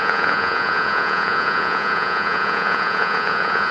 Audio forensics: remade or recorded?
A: remade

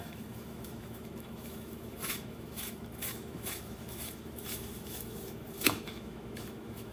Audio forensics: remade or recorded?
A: remade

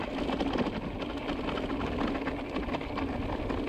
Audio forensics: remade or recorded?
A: recorded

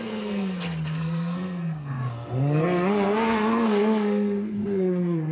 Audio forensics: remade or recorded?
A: remade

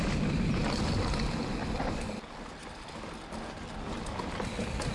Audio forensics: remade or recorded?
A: recorded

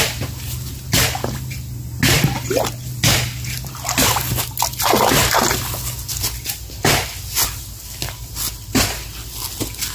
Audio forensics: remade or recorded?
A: recorded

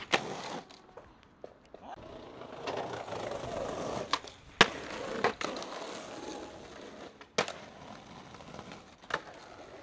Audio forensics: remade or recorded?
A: recorded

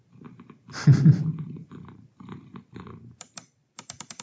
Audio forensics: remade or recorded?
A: remade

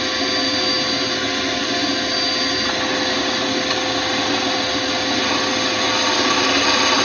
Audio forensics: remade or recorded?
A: recorded